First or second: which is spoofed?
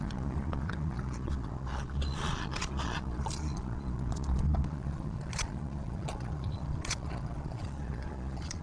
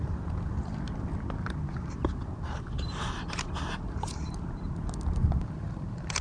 first